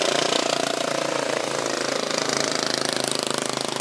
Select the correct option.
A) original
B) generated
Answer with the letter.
A